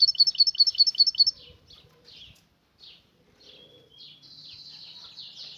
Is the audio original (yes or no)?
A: yes